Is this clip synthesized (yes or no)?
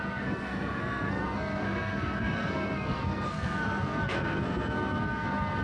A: yes